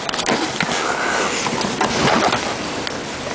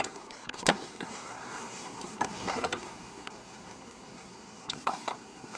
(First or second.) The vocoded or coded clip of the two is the second